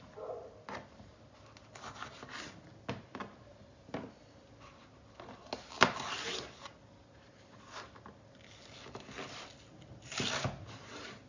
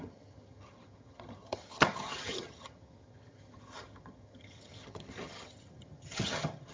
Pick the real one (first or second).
first